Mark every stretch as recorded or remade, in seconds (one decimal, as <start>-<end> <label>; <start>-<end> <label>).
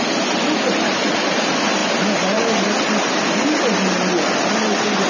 0.0-5.1 recorded